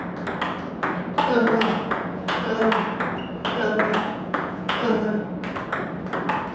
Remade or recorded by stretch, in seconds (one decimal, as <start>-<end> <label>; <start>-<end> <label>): 0.0-1.4 recorded; 1.4-2.6 remade; 2.6-3.8 recorded; 3.8-5.0 remade; 5.0-6.5 recorded